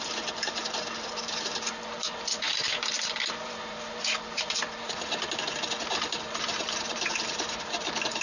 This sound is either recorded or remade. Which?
remade